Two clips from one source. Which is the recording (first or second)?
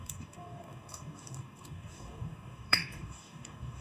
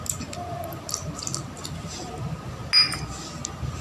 second